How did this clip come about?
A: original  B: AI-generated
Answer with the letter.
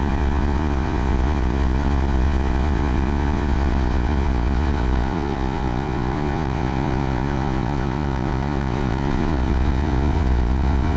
B